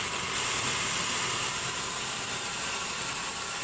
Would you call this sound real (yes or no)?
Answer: yes